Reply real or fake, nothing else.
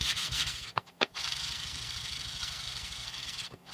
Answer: fake